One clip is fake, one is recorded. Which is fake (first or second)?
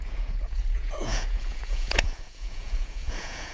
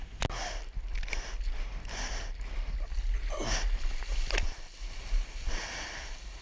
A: first